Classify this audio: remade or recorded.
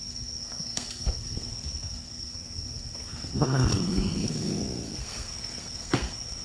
remade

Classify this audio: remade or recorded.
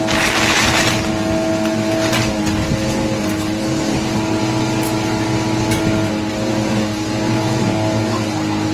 recorded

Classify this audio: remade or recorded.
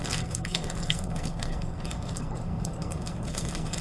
remade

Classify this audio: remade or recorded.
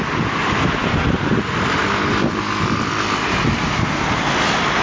recorded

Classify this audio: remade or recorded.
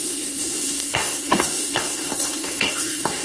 remade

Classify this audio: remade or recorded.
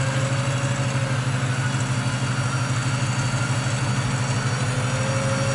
recorded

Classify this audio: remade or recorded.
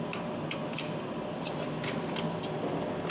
recorded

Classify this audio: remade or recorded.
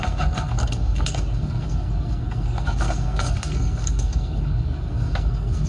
remade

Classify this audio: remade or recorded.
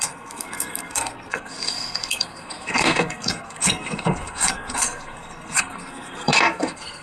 remade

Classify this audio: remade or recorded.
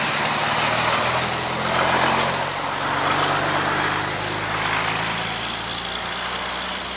recorded